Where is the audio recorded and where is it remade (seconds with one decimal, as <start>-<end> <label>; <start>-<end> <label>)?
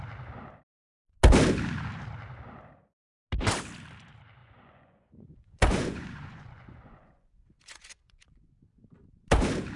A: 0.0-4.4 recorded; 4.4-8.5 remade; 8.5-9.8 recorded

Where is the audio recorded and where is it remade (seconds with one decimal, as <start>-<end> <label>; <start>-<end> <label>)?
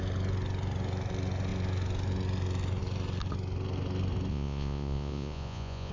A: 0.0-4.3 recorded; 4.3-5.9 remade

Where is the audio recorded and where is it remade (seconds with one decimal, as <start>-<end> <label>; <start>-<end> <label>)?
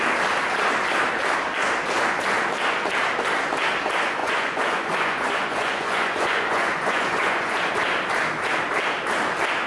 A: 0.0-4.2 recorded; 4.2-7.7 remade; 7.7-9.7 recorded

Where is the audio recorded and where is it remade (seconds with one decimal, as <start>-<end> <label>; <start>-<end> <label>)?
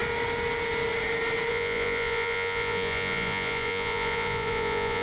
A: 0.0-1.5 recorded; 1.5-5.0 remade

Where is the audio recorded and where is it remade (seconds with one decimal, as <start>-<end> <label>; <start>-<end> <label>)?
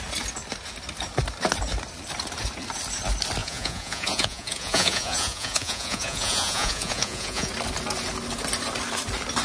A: 0.0-3.4 recorded; 3.4-7.5 remade; 7.5-9.4 recorded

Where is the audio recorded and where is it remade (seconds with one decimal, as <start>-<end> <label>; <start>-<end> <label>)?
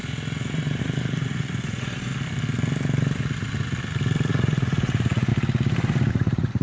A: 0.0-0.8 recorded; 0.8-2.1 remade; 2.1-4.3 recorded; 4.3-5.3 remade; 5.3-6.1 recorded; 6.1-6.6 remade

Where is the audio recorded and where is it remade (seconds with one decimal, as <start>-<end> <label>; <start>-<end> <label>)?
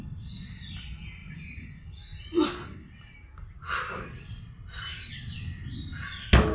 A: 0.0-6.5 recorded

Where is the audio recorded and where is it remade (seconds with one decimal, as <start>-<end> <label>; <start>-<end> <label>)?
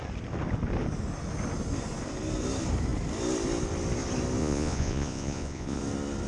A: 0.0-4.4 recorded; 4.4-5.8 remade; 5.8-6.3 recorded